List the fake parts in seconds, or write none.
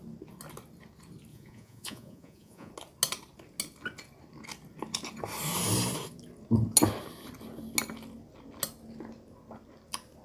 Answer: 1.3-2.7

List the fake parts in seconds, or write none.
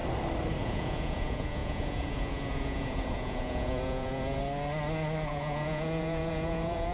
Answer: 0.6-4.4; 5.3-6.9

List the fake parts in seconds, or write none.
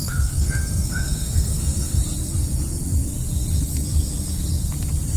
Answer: 0.0-2.0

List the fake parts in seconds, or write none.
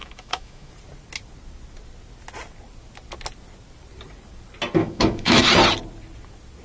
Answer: 0.0-0.7; 4.8-5.4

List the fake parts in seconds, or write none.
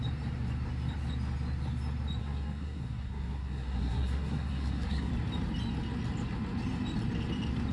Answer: 2.2-5.1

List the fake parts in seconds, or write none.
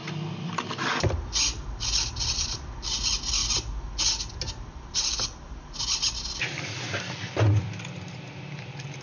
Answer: none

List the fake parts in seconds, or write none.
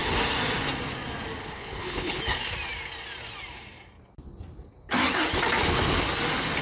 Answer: 1.4-2.2